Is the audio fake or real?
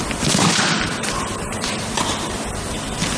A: real